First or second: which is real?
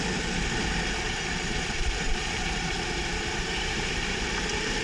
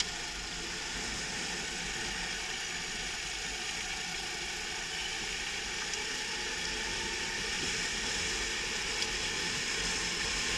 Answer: second